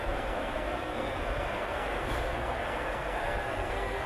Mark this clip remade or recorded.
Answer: remade